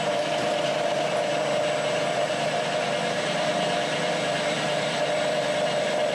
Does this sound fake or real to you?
fake